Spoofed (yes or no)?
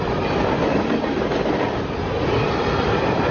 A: yes